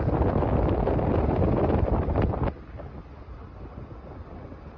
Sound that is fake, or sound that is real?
real